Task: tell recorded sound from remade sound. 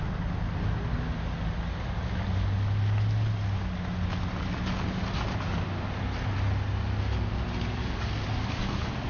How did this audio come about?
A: recorded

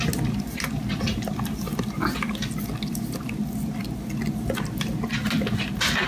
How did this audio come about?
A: recorded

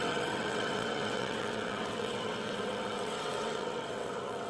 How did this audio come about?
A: remade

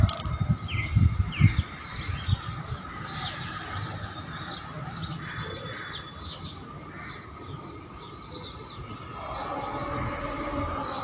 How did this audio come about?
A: recorded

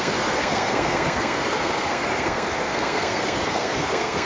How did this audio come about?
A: remade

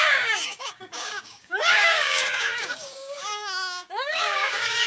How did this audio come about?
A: remade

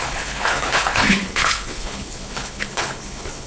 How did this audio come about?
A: remade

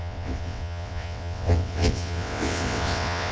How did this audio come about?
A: remade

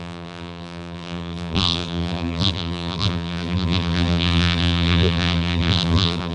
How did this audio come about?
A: remade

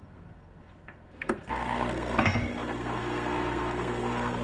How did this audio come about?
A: remade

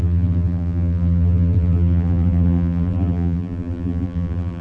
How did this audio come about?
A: remade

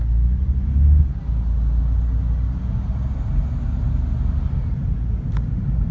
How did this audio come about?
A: recorded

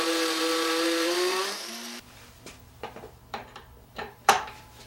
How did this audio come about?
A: remade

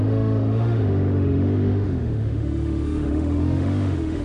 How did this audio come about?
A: remade